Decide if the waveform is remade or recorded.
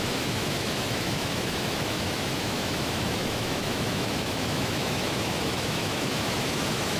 remade